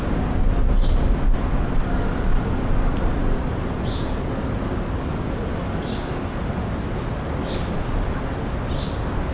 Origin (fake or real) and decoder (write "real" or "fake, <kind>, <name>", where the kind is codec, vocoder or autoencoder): real